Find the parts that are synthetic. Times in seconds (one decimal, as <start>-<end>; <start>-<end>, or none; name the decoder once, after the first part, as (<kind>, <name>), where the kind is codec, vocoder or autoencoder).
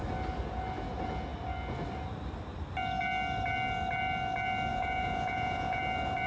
4.7-5.8 (vocoder, Vocos)